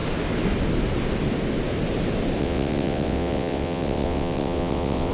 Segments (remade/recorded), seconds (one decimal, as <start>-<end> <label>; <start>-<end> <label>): 0.0-2.4 recorded; 2.4-5.1 remade